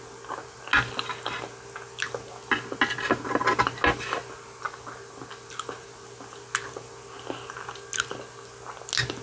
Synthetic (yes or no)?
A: no